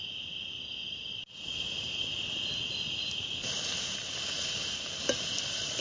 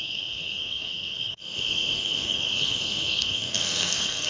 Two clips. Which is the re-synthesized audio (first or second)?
second